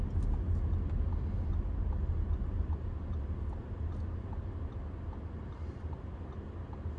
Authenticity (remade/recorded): recorded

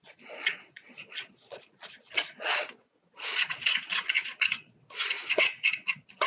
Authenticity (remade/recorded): remade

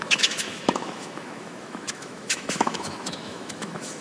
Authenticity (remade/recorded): remade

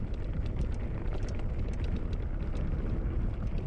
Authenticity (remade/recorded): recorded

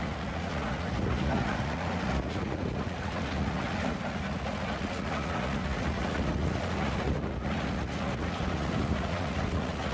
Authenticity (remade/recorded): remade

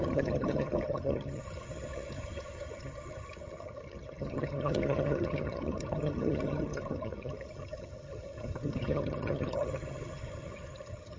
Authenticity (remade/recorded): remade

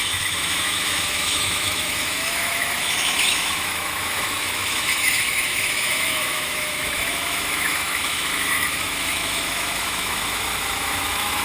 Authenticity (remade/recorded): remade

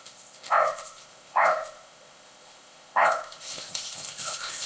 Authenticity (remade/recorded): remade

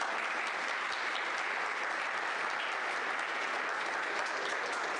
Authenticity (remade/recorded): recorded